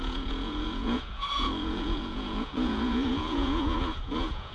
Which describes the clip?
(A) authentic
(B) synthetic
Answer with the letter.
B